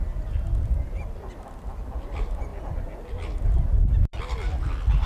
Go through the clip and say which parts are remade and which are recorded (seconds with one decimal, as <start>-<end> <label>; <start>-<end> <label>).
0.0-5.1 recorded